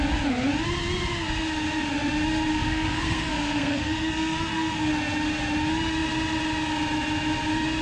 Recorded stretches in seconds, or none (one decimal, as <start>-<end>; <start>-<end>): 0.0-2.5; 4.9-7.8

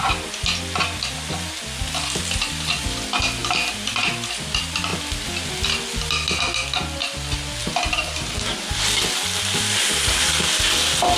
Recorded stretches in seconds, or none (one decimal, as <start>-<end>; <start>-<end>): 0.0-3.4; 4.1-7.6; 8.7-9.8; 10.3-11.2

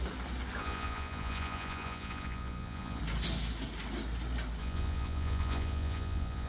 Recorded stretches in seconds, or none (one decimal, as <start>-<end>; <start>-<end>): 0.0-0.6; 3.0-4.6

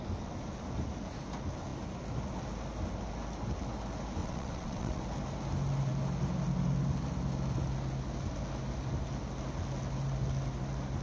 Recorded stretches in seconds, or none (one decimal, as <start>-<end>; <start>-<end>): 0.0-4.2; 5.0-11.0

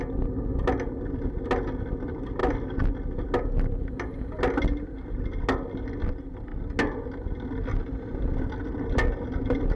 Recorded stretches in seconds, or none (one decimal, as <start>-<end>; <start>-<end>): 0.0-9.8

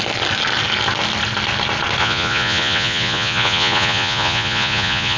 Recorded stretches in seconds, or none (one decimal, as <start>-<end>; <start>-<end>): 0.0-2.0

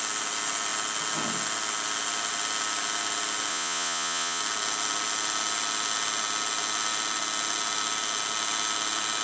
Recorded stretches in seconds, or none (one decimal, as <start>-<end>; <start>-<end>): 0.0-3.5; 4.4-9.2

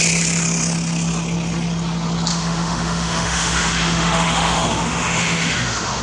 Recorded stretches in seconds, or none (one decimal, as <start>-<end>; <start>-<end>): 0.0-2.3